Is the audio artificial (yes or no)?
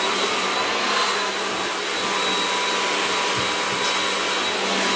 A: no